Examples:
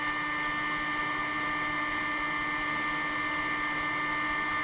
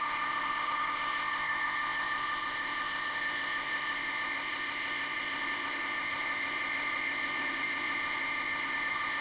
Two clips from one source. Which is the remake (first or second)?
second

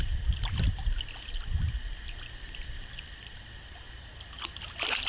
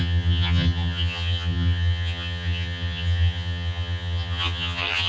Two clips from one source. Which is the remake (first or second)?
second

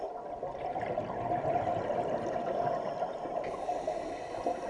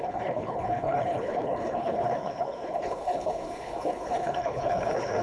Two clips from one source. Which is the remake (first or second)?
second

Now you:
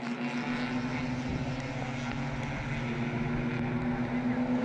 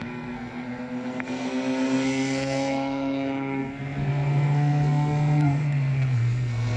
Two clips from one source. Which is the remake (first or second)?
second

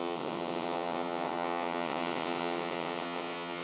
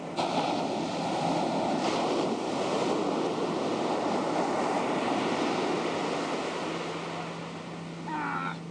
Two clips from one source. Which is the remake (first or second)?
first